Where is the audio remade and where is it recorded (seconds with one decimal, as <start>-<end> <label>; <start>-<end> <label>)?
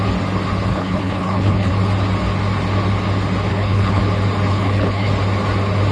0.0-0.7 recorded; 0.7-1.7 remade; 1.7-3.5 recorded; 3.5-4.0 remade; 4.0-4.5 recorded; 4.5-5.1 remade; 5.1-5.9 recorded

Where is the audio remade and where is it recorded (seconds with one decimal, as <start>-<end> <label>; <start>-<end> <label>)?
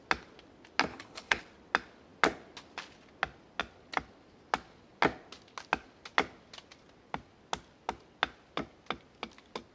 0.0-0.9 recorded; 0.9-1.4 remade; 1.4-9.7 recorded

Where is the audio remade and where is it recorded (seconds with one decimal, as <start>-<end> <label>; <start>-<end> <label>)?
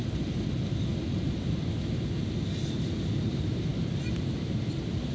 0.0-5.1 recorded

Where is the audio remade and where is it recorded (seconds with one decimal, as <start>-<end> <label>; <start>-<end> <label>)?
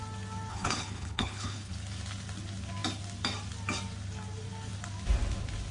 0.0-0.5 recorded; 0.5-1.7 remade; 1.7-5.7 recorded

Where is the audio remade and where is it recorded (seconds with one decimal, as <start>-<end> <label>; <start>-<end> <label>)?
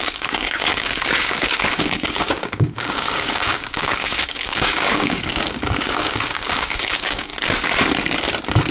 0.0-7.3 remade; 7.3-8.7 recorded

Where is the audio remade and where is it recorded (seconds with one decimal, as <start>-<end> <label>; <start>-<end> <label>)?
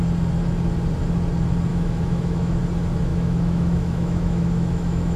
0.0-1.7 recorded; 1.7-2.6 remade; 2.6-3.1 recorded; 3.1-5.2 remade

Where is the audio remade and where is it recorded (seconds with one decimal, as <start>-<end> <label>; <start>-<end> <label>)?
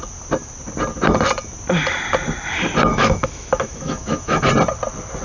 0.0-2.9 recorded; 2.9-4.4 remade; 4.4-5.2 recorded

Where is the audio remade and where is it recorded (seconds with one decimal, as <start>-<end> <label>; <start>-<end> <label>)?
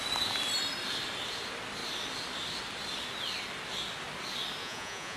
0.0-4.6 recorded; 4.6-5.2 remade